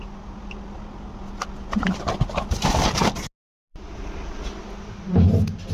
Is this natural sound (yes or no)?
yes